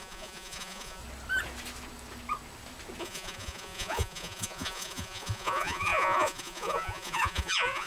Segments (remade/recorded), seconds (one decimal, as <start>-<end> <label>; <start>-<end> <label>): 0.0-1.0 remade; 1.0-3.0 recorded; 3.0-7.9 remade

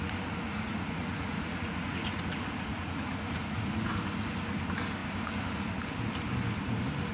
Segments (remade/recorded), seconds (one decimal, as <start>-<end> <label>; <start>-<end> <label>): 0.0-0.5 recorded; 0.5-3.9 remade; 3.9-7.1 recorded

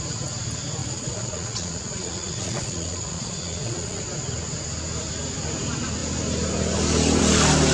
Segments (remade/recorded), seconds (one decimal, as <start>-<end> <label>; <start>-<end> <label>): 0.0-0.8 recorded; 0.8-4.0 remade; 4.0-7.7 recorded

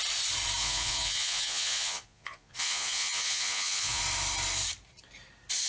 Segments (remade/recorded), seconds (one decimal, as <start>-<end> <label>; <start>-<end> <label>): 0.0-0.6 recorded; 0.6-4.0 remade; 4.0-5.7 recorded

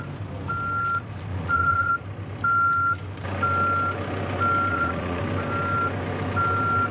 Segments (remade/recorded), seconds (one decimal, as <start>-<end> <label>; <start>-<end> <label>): 0.0-1.3 recorded; 1.3-1.9 remade; 1.9-4.7 recorded; 4.7-5.2 remade; 5.2-6.9 recorded

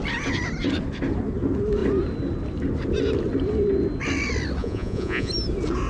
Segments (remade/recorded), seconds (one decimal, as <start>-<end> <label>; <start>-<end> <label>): 0.0-4.6 recorded; 4.6-5.3 remade; 5.3-5.9 recorded